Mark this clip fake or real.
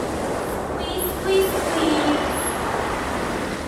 real